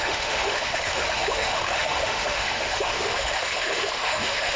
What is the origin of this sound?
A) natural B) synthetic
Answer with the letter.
B